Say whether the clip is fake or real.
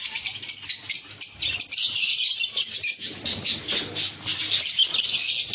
real